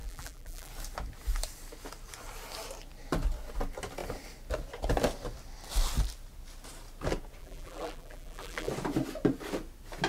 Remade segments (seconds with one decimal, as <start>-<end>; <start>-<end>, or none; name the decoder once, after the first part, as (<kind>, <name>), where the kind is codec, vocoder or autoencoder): 0.0-0.7 (vocoder, BigVGAN v2); 7.4-8.7